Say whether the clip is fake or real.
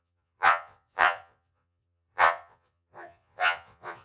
fake